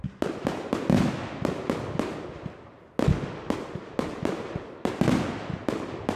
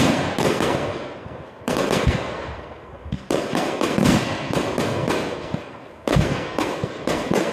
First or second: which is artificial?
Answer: second